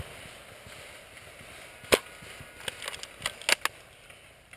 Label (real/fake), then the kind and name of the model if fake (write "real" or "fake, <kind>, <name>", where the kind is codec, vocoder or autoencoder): real